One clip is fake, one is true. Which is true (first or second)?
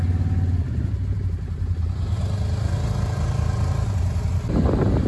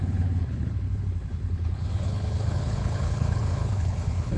first